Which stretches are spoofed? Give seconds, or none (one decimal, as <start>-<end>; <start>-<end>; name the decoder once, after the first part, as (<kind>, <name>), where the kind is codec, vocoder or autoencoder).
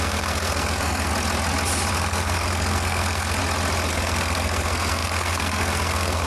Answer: 0.0-1.1 (codec, SNAC); 1.9-3.4; 3.9-6.3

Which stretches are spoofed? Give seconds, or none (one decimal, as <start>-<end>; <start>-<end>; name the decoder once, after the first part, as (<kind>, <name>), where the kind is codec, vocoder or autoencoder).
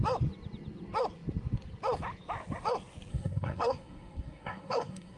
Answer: 3.1-5.2 (codec, SNAC)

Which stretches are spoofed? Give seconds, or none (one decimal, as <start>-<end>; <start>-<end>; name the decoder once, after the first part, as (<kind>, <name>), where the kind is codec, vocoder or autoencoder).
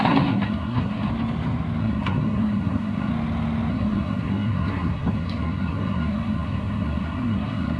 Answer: 0.0-1.1 (codec, SNAC); 1.8-3.1; 3.7-7.8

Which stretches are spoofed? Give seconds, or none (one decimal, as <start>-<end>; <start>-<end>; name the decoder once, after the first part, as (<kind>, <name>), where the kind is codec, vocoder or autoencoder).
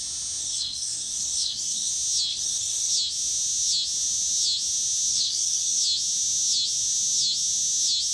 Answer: 0.4-1.9 (codec, SNAC); 2.3-2.9; 5.1-5.8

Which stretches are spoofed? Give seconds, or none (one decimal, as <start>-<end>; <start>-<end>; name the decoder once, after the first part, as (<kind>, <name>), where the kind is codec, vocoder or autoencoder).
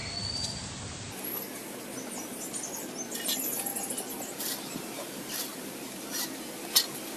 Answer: none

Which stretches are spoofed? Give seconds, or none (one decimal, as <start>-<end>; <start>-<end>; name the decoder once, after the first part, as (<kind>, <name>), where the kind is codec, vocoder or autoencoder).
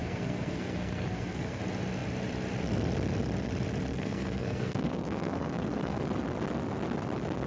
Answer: 0.0-1.6 (codec, SNAC); 3.9-6.0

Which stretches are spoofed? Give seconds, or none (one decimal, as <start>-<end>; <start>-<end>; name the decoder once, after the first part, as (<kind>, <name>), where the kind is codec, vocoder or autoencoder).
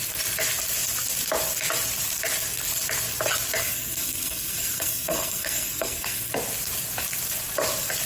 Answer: 3.6-6.3 (codec, SNAC)